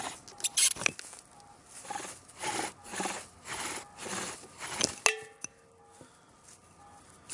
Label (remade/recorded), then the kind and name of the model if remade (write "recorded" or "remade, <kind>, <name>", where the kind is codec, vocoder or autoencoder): recorded